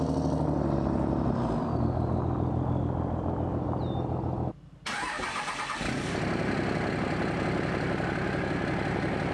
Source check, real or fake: real